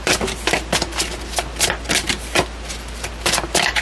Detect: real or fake fake